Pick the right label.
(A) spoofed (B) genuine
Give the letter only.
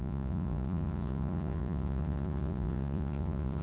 A